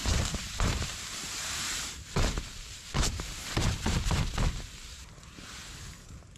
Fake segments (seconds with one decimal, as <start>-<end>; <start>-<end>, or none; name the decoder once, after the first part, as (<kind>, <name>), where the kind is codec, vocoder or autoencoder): 0.0-3.8 (vocoder, BigVGAN v2)